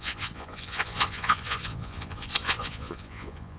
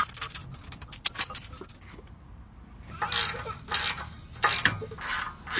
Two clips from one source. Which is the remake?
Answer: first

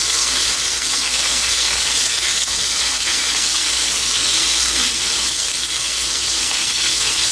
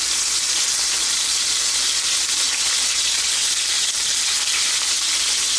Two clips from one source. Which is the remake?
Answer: first